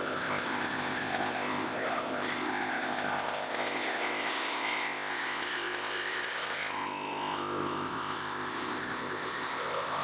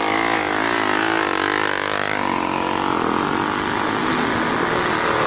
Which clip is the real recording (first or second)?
second